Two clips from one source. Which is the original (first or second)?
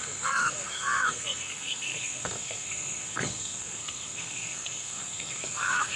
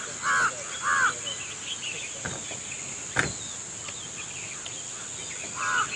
second